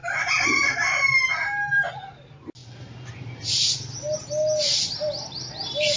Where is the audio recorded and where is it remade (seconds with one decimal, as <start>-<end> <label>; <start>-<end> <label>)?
0.0-1.9 remade; 1.9-6.0 recorded